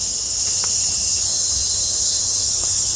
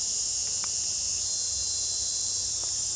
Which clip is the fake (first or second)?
first